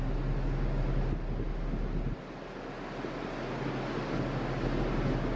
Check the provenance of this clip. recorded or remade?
recorded